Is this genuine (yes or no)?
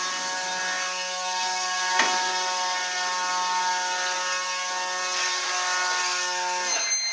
yes